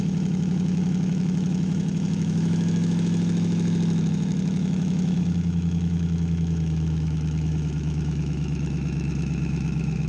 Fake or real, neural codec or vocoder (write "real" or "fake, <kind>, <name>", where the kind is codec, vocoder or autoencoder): fake, autoencoder, DAC-VAE